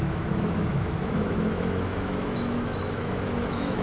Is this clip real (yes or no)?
no